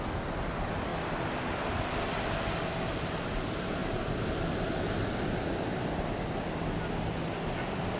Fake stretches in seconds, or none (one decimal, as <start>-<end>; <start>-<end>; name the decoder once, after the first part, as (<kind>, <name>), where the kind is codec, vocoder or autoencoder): none